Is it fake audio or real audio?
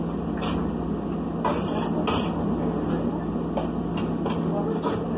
real